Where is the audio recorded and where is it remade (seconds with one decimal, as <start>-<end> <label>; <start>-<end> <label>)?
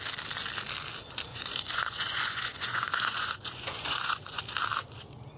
0.0-1.3 recorded; 1.3-4.4 remade; 4.4-5.4 recorded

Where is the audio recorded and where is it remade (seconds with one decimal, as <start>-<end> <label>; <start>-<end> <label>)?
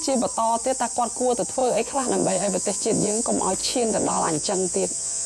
0.0-1.6 recorded; 1.6-3.2 remade; 3.2-3.6 recorded; 3.6-5.3 remade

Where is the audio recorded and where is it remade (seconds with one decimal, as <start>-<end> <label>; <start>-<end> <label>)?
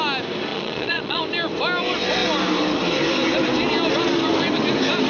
0.0-0.5 recorded; 0.5-1.2 remade; 1.2-5.1 recorded